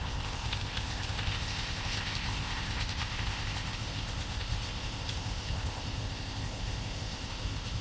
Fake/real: fake